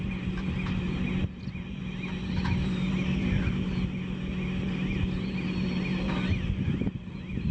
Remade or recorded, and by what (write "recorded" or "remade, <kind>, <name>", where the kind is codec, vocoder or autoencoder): recorded